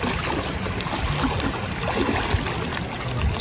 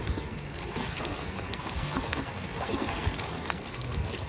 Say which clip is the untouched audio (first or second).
first